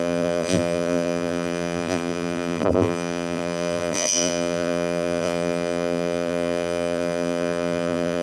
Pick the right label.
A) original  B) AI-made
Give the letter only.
B